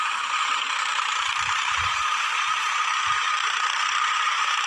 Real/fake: fake